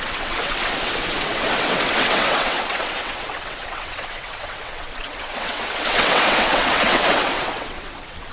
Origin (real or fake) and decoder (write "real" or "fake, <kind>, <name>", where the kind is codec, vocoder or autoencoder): fake, vocoder, WaveNeXt